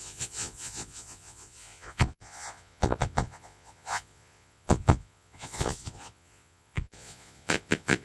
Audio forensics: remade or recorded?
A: remade